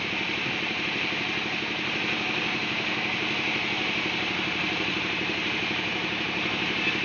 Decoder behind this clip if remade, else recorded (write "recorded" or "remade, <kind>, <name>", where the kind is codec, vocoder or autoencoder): recorded